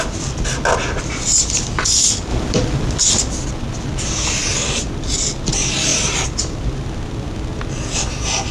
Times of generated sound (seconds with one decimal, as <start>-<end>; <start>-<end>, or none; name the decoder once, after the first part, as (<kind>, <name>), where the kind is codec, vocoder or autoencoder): 2.3-3.0 (vocoder, BigVGAN v2); 4.4-4.9; 5.9-6.6